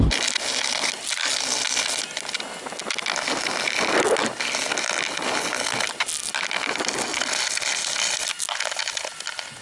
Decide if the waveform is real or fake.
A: real